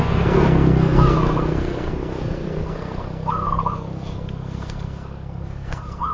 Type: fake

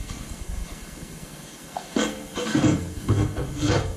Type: fake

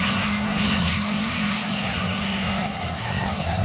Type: fake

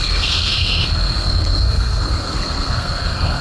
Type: fake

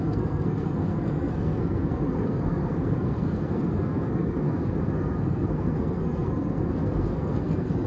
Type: fake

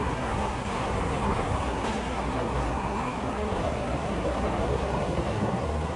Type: fake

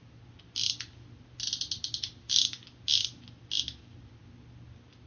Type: real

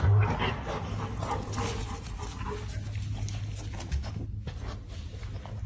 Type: real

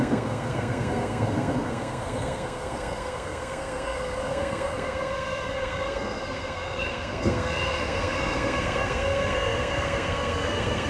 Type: fake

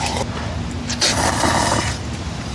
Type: real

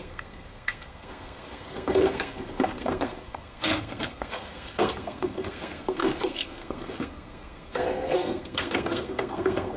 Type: fake